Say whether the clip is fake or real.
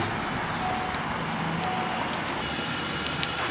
real